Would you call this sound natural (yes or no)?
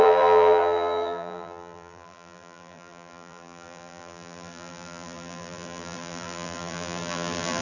no